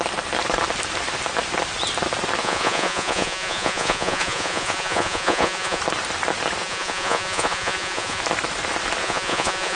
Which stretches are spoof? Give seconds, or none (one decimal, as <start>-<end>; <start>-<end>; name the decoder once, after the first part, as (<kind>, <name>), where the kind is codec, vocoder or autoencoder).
2.4-5.8 (vocoder, Vocos); 6.6-8.2; 9.0-9.8